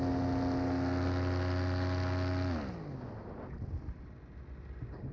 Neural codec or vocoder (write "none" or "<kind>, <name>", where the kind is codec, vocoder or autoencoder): none